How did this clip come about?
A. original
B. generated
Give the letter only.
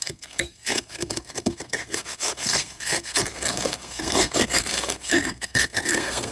B